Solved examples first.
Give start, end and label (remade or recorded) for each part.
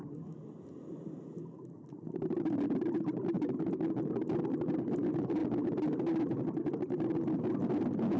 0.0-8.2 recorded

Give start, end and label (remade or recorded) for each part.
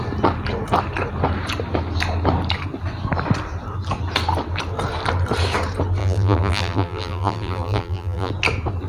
0.0-6.0 recorded; 6.0-8.3 remade; 8.3-8.9 recorded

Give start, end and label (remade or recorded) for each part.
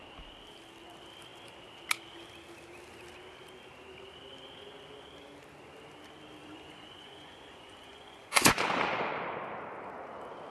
0.0-6.4 recorded; 6.4-9.2 remade; 9.2-10.5 recorded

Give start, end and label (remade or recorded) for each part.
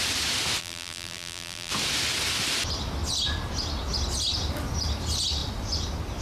0.0-0.6 recorded; 0.6-1.7 remade; 1.7-6.2 recorded